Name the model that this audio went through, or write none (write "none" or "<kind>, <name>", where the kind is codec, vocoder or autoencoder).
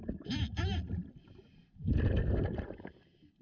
none